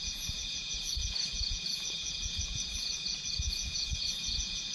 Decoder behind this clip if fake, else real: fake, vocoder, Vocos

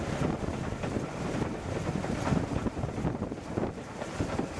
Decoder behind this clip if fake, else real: real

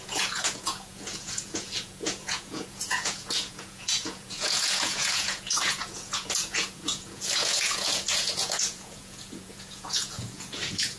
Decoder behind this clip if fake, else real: fake, vocoder, Vocos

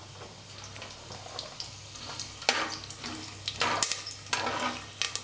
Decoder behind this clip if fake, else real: real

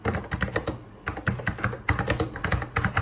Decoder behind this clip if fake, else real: real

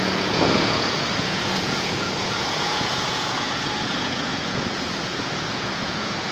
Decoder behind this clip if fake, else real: fake, vocoder, Vocos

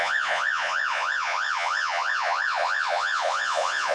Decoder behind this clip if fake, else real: fake, vocoder, Vocos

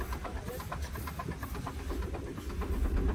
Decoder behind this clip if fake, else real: real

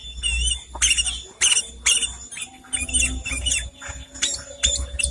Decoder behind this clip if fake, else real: real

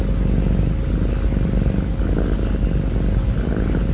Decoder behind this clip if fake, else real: real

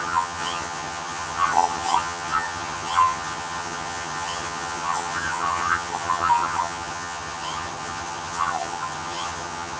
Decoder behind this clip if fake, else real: fake, vocoder, HiFi-GAN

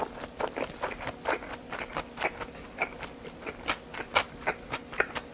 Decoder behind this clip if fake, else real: real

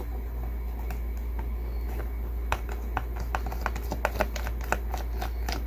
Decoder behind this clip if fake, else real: real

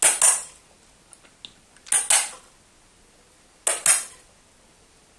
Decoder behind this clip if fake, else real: real